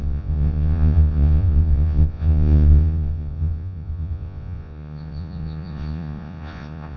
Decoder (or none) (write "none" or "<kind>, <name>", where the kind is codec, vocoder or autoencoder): vocoder, Vocos